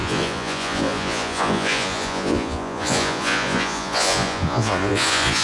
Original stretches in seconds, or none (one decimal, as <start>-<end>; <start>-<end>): none